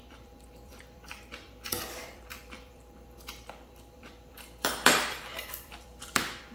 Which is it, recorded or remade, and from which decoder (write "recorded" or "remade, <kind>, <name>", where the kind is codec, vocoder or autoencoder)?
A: remade, vocoder, BigVGAN v2